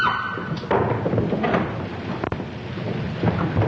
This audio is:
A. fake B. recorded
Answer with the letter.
B